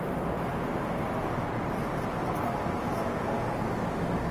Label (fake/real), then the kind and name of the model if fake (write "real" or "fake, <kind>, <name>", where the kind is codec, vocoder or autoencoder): real